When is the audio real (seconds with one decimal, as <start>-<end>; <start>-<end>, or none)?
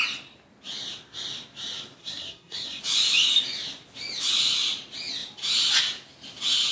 0.0-2.0; 2.8-6.7